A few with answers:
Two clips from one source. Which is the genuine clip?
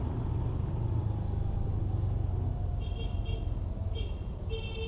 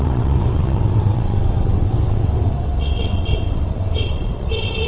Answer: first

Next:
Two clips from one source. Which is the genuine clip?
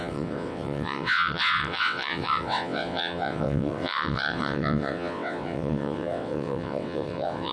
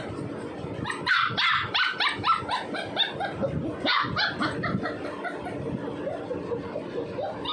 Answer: second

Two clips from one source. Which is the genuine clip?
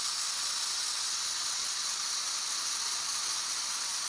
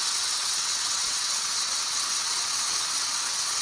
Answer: first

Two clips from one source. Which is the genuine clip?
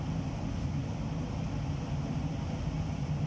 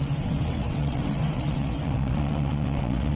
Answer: first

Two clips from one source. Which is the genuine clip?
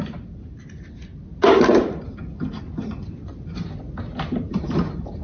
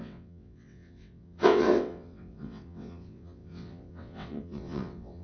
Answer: first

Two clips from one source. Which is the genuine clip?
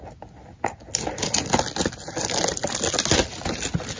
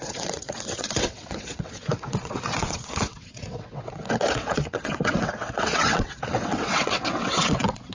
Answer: first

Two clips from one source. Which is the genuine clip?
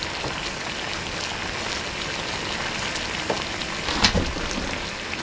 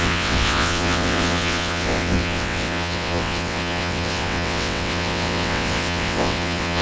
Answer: first